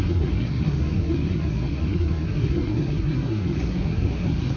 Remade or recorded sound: remade